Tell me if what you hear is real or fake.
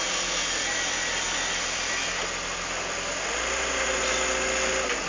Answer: real